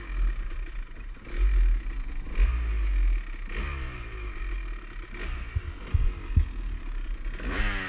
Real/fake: real